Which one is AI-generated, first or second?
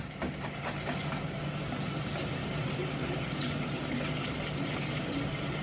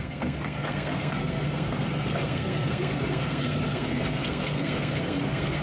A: second